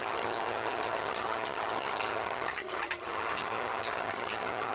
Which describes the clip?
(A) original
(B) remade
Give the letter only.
B